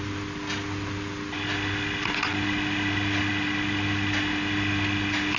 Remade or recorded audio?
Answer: recorded